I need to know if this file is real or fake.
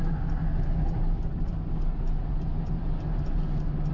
real